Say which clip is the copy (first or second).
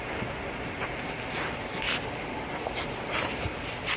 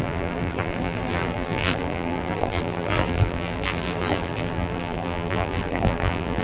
second